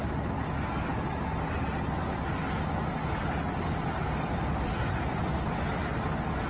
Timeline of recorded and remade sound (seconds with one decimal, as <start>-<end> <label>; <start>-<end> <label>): 0.0-6.5 recorded